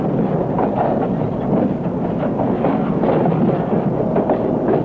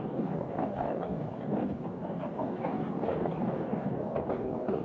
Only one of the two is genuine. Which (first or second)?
first